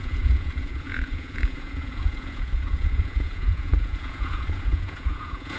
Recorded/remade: remade